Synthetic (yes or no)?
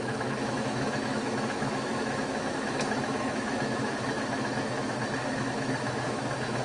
yes